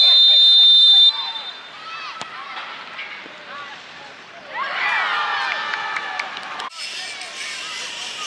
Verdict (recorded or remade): recorded